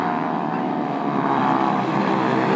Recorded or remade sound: remade